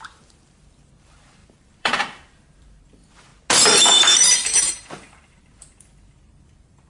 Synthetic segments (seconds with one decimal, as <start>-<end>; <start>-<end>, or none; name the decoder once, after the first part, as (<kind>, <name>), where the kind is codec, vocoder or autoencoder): 0.0-3.3 (vocoder, BigVGAN v2); 4.3-6.9